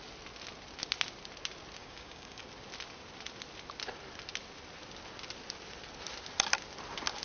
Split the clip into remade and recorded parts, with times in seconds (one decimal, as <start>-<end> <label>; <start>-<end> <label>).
0.0-1.8 recorded; 1.8-2.4 remade; 2.4-7.2 recorded